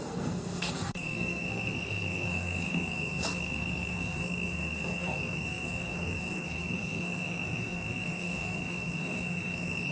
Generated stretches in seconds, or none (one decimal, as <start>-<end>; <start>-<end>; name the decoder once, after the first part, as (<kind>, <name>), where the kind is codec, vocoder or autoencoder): 0.0-9.9 (codec, SNAC)